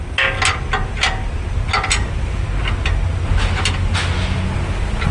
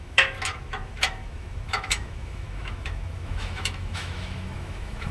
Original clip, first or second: first